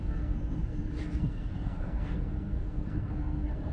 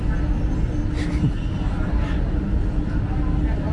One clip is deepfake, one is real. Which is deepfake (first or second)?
first